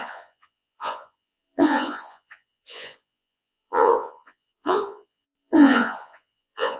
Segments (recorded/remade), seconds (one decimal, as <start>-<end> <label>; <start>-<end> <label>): 0.0-6.8 remade

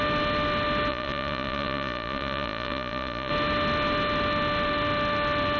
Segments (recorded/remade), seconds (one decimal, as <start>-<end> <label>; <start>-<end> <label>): 0.0-0.9 recorded; 0.9-3.3 remade; 3.3-5.6 recorded

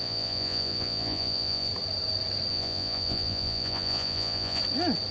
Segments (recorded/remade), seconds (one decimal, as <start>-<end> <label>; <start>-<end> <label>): 0.0-1.7 remade; 1.7-2.5 recorded; 2.5-4.6 remade; 4.6-5.1 recorded

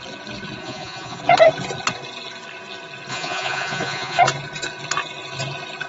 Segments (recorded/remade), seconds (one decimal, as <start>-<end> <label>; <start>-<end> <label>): 0.0-0.6 recorded; 0.6-1.2 remade; 1.2-3.1 recorded; 3.1-4.2 remade; 4.2-5.9 recorded

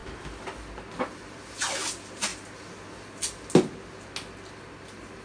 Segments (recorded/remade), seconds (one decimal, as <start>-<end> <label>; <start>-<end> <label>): 0.0-5.2 recorded

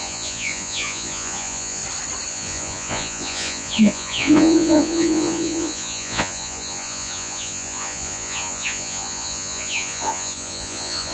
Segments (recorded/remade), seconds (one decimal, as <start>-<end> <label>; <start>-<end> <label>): 0.0-1.8 remade; 1.8-2.3 recorded; 2.3-11.1 remade